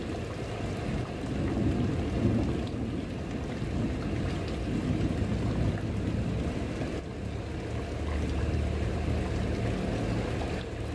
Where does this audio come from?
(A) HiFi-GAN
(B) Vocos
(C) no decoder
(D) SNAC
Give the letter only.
C